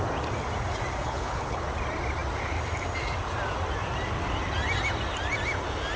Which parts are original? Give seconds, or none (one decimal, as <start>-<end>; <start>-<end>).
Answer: 0.0-1.0; 1.6-6.0

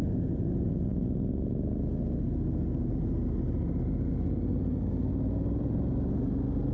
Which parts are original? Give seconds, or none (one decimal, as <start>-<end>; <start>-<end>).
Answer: 0.0-6.7

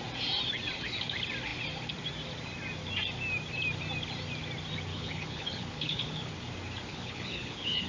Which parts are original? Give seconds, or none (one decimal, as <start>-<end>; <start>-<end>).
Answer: 0.0-4.9; 6.3-6.9

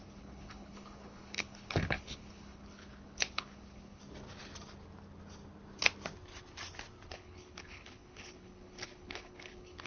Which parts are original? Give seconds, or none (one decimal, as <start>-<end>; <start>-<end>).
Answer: 4.0-7.1

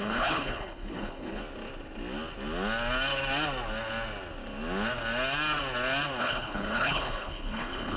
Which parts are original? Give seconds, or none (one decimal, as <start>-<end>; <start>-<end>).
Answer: 1.4-6.2

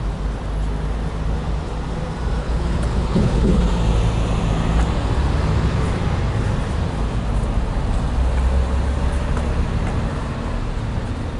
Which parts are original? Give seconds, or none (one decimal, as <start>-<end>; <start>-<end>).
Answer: 0.0-2.4; 3.6-11.4

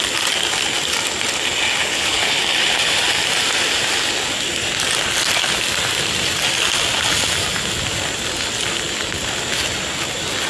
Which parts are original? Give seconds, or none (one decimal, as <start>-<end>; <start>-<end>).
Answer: 0.0-1.8; 2.4-10.5

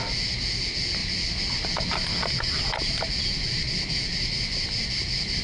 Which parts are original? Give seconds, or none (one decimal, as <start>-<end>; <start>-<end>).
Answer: 0.0-5.4